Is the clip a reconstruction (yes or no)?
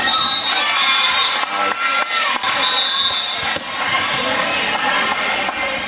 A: no